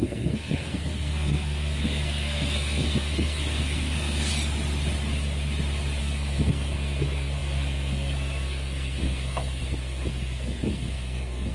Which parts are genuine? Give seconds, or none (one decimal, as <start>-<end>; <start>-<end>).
4.3-6.0

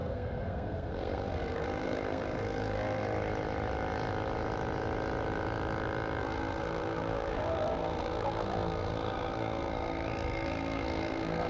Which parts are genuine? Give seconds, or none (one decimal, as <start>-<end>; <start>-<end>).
3.0-6.2

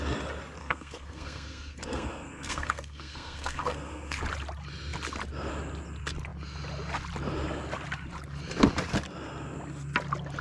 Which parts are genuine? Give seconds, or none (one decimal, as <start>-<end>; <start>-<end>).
0.0-0.6; 4.2-10.4

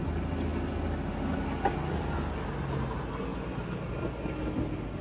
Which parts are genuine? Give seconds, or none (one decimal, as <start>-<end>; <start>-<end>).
0.0-5.0

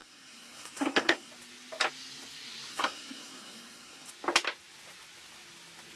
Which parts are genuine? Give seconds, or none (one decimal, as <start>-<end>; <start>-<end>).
1.3-2.7; 4.1-6.0

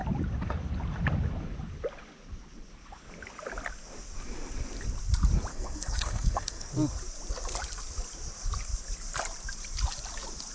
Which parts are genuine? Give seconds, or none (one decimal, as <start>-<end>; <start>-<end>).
0.0-5.5; 6.7-10.5

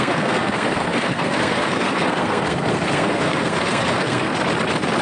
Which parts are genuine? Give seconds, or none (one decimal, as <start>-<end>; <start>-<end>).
4.3-5.0